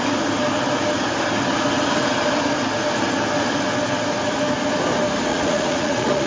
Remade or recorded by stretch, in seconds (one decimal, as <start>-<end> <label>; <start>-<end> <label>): 0.0-5.3 recorded; 5.3-6.3 remade